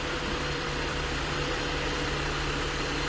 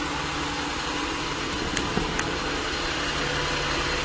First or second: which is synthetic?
first